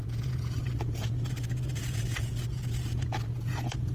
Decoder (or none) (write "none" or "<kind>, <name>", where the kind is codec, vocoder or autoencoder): vocoder, Vocos